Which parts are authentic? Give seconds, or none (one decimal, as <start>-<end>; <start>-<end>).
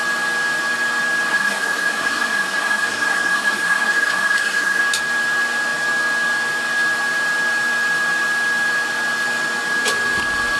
0.0-1.3; 4.8-10.6